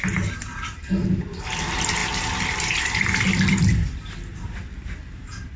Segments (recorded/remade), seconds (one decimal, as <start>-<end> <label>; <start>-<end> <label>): 0.0-5.6 recorded